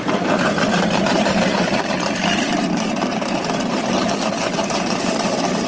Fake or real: fake